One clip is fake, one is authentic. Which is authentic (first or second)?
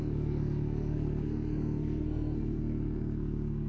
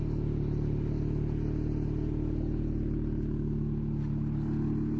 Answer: second